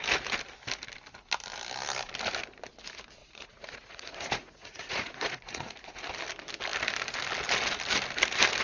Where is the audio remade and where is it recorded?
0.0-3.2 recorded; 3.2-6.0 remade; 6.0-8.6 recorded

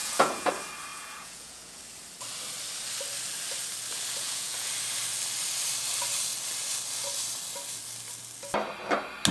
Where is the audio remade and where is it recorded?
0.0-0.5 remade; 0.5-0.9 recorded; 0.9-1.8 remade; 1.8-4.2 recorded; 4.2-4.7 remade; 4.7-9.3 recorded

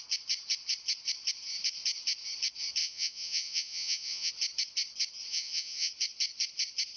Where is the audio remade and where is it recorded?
0.0-2.8 recorded; 2.8-4.3 remade; 4.3-5.3 recorded; 5.3-5.9 remade; 5.9-7.0 recorded

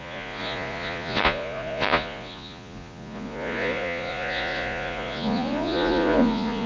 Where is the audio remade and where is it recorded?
0.0-6.7 remade